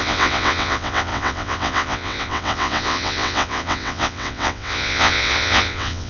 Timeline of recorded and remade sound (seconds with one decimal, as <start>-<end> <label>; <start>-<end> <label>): 0.0-6.1 remade